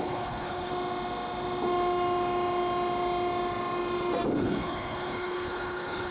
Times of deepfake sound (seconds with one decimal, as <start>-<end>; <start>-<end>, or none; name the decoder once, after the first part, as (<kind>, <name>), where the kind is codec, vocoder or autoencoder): 0.0-0.7 (codec, HILCodec); 4.4-6.1